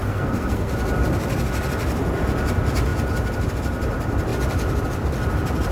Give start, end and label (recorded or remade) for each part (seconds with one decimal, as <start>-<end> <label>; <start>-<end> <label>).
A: 0.0-0.7 remade; 0.7-5.7 recorded